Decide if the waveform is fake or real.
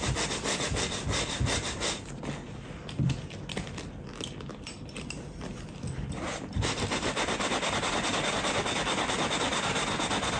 real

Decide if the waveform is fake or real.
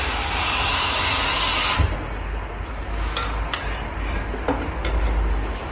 real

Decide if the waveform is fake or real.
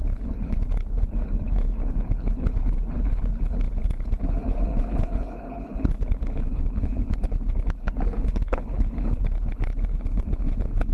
fake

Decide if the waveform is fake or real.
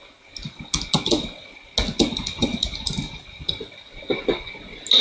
real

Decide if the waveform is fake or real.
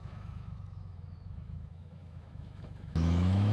fake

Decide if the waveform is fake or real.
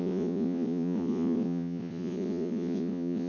fake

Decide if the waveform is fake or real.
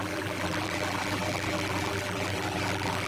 fake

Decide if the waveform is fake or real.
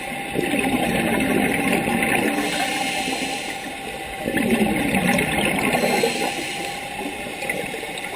real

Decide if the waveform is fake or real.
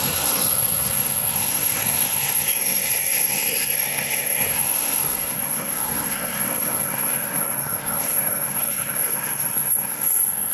fake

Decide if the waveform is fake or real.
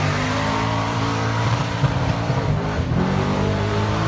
fake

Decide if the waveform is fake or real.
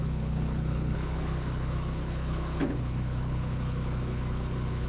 fake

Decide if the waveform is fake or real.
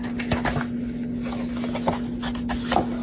real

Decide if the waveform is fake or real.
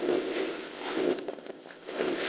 fake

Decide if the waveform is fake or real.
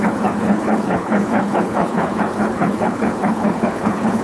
fake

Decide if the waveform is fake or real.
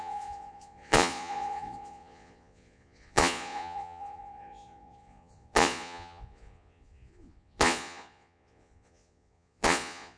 fake